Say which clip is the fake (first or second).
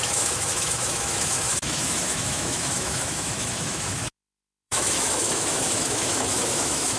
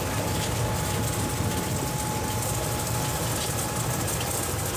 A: first